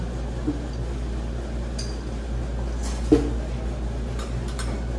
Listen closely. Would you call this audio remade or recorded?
recorded